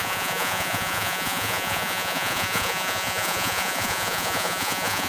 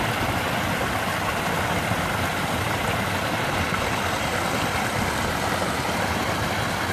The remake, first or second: first